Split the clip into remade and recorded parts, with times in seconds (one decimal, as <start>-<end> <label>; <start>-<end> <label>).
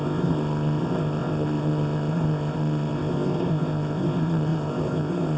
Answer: 0.0-5.4 remade